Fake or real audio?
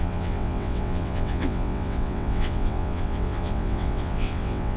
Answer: fake